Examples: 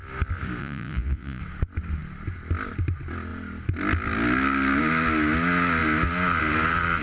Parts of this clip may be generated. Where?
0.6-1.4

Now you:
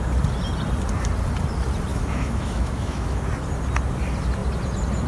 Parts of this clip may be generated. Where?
1.9-3.2

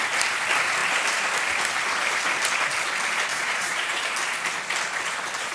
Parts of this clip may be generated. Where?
3.3-4.0

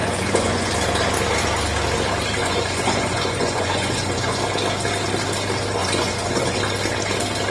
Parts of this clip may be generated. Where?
0.0-0.7; 2.4-4.4; 5.8-6.6

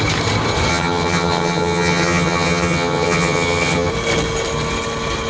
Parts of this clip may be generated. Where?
0.7-3.9